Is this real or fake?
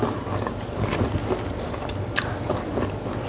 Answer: real